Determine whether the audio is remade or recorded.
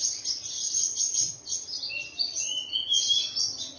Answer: recorded